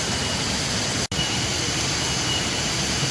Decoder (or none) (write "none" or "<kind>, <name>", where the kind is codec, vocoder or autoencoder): none